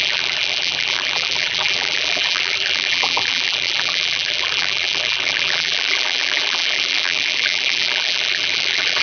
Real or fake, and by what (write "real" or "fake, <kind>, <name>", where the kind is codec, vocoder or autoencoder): fake, vocoder, BigVGAN v2